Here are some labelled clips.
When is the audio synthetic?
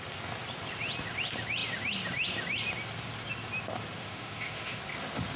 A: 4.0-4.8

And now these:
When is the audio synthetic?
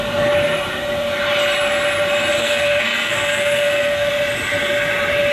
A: 2.4-4.1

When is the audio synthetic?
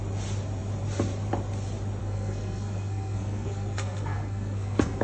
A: 2.0-5.0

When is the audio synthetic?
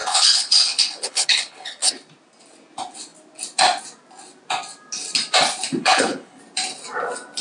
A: 0.0-1.9; 5.8-6.4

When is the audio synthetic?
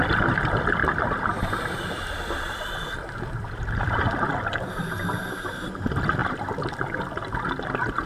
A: 0.8-4.7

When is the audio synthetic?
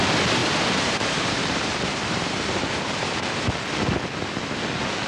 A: 0.4-3.5